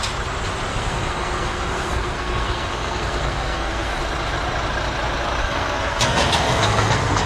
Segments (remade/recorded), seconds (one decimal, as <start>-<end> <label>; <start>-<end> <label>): 0.0-0.7 recorded; 0.7-4.0 remade; 4.0-5.4 recorded; 5.4-7.3 remade

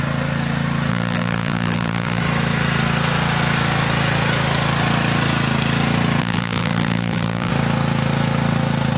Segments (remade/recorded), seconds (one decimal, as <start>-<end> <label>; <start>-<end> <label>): 0.0-0.9 recorded; 0.9-2.2 remade; 2.2-6.2 recorded; 6.2-7.5 remade; 7.5-9.0 recorded

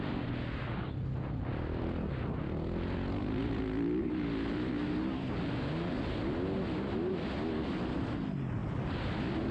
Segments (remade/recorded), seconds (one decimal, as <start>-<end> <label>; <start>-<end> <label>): 0.0-9.5 recorded

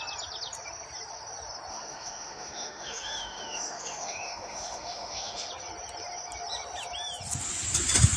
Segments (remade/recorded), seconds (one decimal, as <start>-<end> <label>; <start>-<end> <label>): 0.0-1.7 recorded; 1.7-5.5 remade; 5.5-8.2 recorded

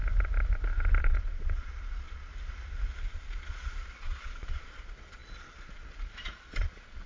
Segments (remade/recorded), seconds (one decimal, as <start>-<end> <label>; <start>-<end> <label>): 0.0-1.0 recorded; 1.0-2.3 remade; 2.3-3.1 recorded; 3.1-7.1 remade